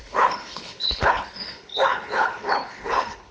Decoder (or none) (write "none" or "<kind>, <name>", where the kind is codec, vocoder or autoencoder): codec, HILCodec